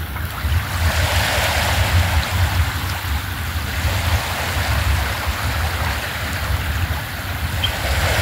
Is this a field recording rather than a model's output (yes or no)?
yes